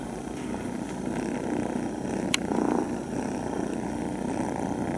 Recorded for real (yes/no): yes